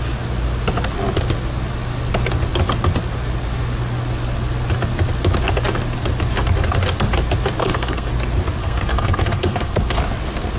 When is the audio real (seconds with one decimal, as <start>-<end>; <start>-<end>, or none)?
0.0-7.6; 8.1-8.6; 10.0-10.6